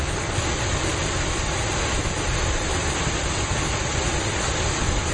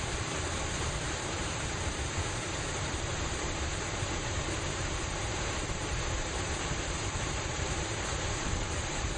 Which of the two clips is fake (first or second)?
second